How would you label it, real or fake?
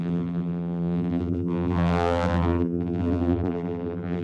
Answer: fake